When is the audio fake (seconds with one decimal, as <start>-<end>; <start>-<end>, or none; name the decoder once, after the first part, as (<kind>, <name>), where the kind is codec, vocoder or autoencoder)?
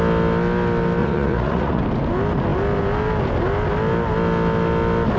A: 1.0-1.8 (vocoder, Vocos)